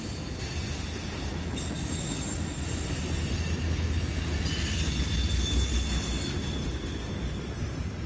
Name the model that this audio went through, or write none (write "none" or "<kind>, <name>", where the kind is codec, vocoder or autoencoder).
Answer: none